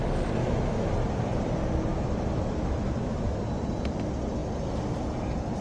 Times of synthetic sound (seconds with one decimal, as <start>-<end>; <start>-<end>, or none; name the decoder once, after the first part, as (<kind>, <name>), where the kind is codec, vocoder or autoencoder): 0.4-0.9 (autoencoder, DAC-VAE); 1.9-3.4